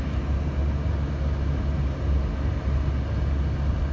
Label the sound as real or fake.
real